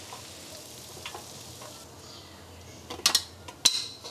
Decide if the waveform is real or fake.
real